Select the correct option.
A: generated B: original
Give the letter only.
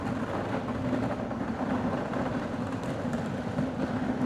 B